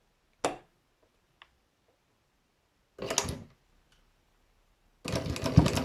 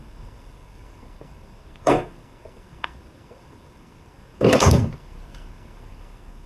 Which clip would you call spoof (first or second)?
second